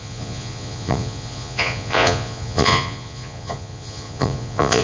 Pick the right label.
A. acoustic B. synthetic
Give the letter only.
B